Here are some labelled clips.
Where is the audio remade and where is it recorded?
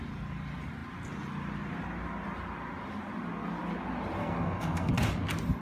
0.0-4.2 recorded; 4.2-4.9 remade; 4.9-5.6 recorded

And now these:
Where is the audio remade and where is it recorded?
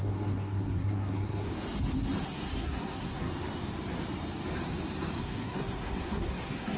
0.0-1.5 remade; 1.5-2.2 recorded; 2.2-3.3 remade; 3.3-5.2 recorded; 5.2-6.8 remade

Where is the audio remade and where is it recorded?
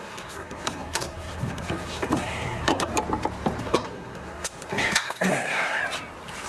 0.0-2.9 remade; 2.9-3.6 recorded; 3.6-5.8 remade; 5.8-6.5 recorded